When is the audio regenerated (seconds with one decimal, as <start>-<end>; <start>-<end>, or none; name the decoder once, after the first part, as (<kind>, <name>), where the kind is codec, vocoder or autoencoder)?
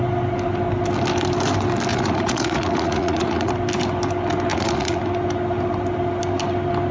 1.9-3.5 (vocoder, Vocos); 4.5-5.0